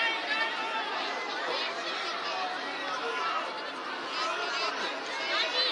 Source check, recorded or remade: recorded